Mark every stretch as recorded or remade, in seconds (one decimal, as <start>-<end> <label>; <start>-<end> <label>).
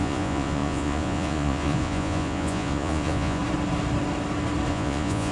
0.0-3.4 remade; 3.4-4.7 recorded; 4.7-5.3 remade